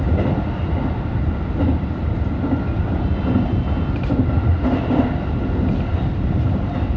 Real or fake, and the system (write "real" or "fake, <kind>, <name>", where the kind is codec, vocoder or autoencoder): real